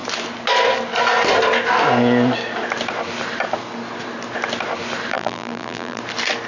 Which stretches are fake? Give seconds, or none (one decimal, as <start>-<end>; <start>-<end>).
5.1-6.0